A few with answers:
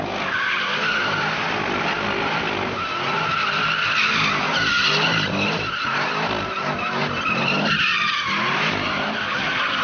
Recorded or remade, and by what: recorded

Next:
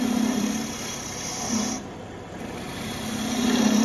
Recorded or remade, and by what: remade, vocoder, BigVGAN v2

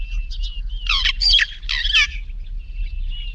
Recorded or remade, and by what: recorded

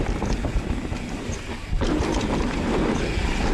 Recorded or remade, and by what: recorded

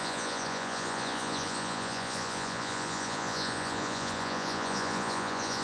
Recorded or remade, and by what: remade, vocoder, Vocos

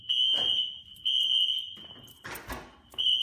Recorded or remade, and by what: recorded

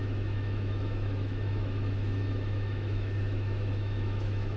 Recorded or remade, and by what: remade, autoencoder, DAC-VAE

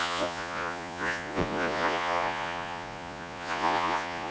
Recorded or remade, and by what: remade, vocoder, Vocos